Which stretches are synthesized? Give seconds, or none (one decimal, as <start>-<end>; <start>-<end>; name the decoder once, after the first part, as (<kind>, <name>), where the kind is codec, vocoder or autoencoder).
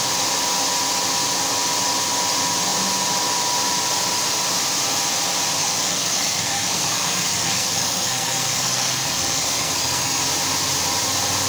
5.6-10.2 (codec, SNAC)